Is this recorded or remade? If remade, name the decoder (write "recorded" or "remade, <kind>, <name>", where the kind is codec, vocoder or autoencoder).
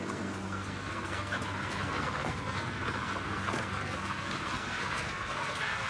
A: remade, codec, SNAC